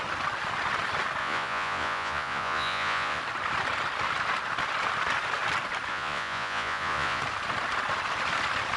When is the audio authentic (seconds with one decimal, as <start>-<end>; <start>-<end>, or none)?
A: 0.0-1.2; 3.2-5.9; 7.2-8.8